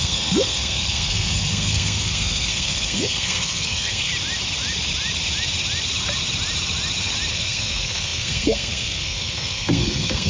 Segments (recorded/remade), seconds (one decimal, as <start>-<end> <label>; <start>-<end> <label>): 0.0-4.1 remade; 4.1-7.3 recorded; 7.3-10.3 remade